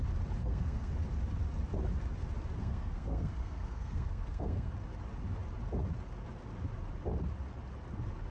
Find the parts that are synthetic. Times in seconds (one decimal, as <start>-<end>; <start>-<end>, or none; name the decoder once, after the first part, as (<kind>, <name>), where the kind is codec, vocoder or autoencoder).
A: 0.4-0.9 (codec, SNAC); 2.6-4.7

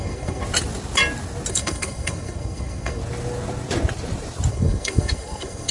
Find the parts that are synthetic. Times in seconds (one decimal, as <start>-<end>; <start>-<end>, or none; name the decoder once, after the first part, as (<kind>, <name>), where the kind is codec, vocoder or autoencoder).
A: 0.0-0.4 (codec, SNAC); 1.5-3.0; 4.5-5.7

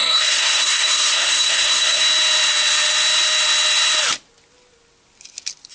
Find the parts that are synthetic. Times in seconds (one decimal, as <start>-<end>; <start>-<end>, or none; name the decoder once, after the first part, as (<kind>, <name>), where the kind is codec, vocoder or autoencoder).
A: 0.0-2.0 (codec, SNAC)

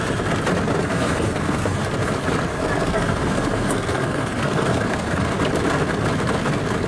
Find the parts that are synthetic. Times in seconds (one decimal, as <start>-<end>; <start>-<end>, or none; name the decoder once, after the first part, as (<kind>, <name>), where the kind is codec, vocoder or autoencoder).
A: 0.8-1.8 (codec, SNAC); 2.5-5.3

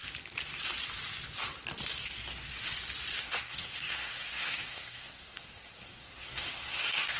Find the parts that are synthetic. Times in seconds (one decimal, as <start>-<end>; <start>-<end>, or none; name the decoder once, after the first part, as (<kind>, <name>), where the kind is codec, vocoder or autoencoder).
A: 3.2-7.2 (codec, SNAC)

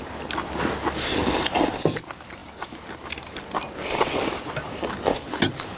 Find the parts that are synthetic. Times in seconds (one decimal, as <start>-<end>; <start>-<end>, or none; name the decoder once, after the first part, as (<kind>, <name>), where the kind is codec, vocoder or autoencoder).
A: none